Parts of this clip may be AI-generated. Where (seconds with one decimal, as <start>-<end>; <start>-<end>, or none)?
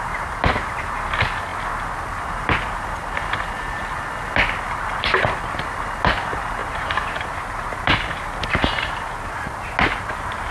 none